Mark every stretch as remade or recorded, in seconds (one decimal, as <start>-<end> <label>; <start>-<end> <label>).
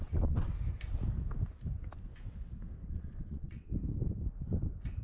0.0-0.5 remade; 0.5-2.9 recorded; 2.9-3.7 remade; 3.7-5.0 recorded